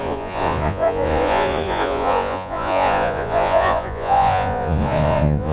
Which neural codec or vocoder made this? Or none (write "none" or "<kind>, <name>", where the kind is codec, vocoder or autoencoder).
vocoder, Vocos